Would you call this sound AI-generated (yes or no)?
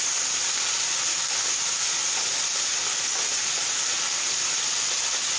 no